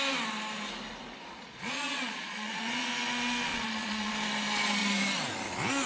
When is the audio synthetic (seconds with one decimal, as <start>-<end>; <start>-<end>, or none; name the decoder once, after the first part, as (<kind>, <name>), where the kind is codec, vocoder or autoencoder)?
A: 1.2-2.9 (vocoder, Vocos); 3.5-4.1